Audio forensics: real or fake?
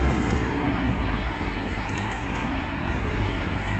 fake